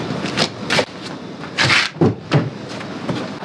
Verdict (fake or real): real